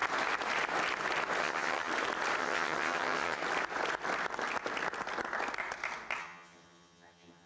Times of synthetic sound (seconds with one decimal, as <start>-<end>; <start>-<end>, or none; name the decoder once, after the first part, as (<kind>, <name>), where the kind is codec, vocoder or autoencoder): 1.4-1.9 (vocoder, HiFi-GAN); 2.4-3.4; 6.2-7.5